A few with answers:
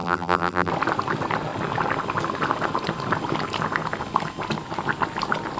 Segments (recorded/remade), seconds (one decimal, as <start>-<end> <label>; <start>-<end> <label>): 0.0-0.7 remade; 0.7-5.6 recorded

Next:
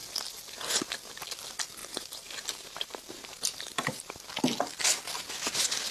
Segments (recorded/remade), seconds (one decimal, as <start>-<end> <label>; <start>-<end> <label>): 0.0-1.8 recorded; 1.8-4.1 remade; 4.1-5.9 recorded

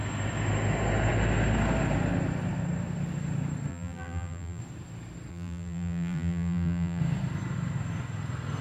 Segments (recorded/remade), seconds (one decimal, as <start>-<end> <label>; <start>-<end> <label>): 0.0-3.7 recorded; 3.7-4.6 remade; 4.6-5.3 recorded; 5.3-7.0 remade; 7.0-8.6 recorded

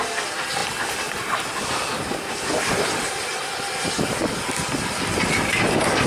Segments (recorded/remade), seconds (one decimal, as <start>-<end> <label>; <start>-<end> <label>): 0.0-6.1 recorded

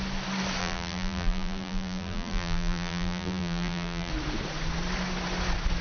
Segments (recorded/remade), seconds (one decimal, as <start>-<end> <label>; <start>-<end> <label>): 0.0-0.6 recorded; 0.6-4.1 remade; 4.1-5.8 recorded

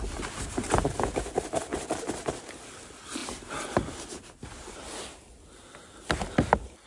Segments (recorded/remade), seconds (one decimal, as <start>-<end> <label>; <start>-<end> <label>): 0.0-6.9 recorded

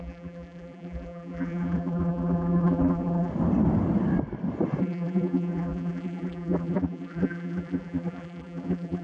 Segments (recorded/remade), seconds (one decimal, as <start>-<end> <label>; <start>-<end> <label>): 0.0-3.3 remade; 3.3-4.8 recorded; 4.8-9.0 remade

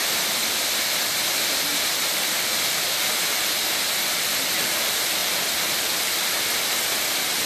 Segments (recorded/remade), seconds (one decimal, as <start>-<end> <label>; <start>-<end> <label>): 0.0-1.7 remade; 1.7-4.6 recorded; 4.6-5.2 remade; 5.2-7.5 recorded